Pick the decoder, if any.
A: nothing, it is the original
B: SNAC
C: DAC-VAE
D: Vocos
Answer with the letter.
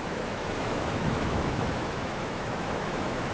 C